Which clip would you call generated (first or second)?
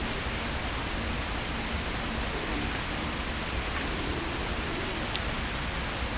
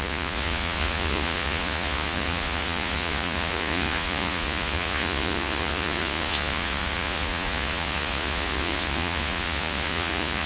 second